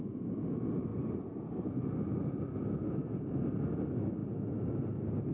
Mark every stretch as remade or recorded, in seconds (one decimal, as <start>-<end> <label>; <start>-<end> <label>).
0.0-5.3 recorded